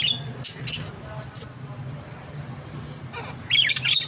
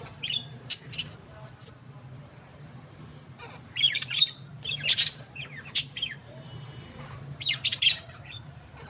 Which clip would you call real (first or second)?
first